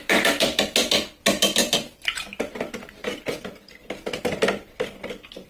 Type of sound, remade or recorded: recorded